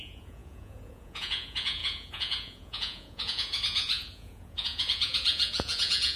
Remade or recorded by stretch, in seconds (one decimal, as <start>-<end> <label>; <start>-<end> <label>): 0.0-6.2 remade